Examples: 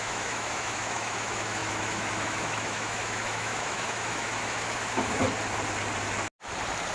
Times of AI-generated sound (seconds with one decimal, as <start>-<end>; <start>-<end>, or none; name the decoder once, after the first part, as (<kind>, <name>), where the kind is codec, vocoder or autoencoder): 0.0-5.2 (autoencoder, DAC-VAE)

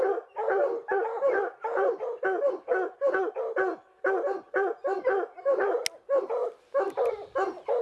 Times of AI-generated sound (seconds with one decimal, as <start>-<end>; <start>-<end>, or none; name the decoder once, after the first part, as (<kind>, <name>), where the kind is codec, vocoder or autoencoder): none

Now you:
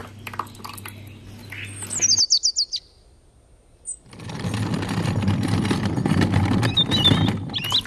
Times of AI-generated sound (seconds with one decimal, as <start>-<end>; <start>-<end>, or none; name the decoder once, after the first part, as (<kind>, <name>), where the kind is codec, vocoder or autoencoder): none

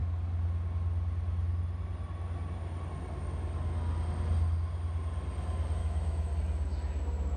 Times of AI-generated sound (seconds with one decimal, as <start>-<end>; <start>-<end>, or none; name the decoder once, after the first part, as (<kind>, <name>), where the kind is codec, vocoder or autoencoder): 5.8-6.3 (autoencoder, DAC-VAE)